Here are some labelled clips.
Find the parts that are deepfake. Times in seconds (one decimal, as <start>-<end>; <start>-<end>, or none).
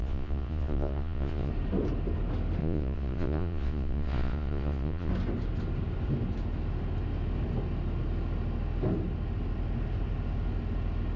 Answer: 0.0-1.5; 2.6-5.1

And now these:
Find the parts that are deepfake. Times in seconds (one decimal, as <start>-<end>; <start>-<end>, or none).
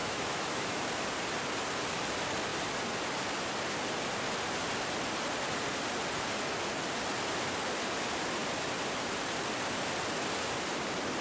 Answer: 0.0-0.9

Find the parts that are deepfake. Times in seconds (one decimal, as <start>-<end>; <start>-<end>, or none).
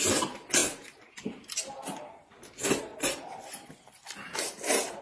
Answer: none